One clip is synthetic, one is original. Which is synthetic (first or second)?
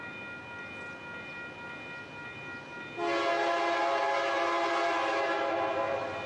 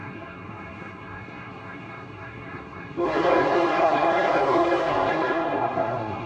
second